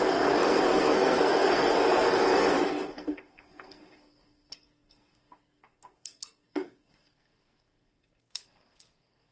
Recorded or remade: remade